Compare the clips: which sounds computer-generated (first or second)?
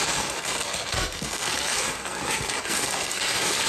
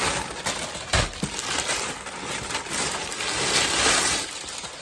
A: first